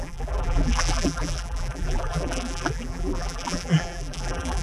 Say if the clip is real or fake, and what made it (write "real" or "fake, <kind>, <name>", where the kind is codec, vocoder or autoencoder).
fake, vocoder, BigVGAN v2